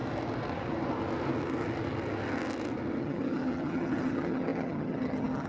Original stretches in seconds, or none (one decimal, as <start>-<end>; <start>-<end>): 0.0-3.0